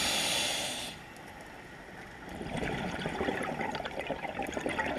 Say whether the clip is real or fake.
real